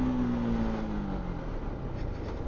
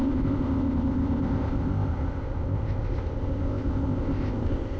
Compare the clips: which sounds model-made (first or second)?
second